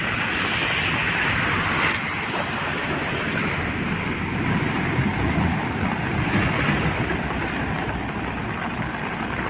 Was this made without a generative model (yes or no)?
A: no